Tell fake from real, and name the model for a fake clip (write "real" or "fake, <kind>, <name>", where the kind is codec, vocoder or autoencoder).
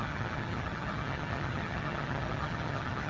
fake, vocoder, HiFi-GAN